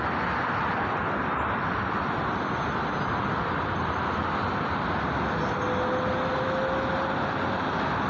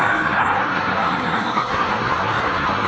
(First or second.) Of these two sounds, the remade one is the second